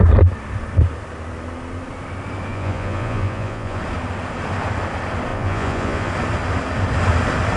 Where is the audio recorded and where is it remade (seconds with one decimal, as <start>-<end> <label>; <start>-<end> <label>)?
0.0-2.5 recorded; 2.5-3.8 remade; 3.8-5.3 recorded; 5.3-6.1 remade; 6.1-7.6 recorded